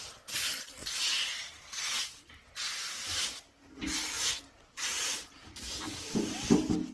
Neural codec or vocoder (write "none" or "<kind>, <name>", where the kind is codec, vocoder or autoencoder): none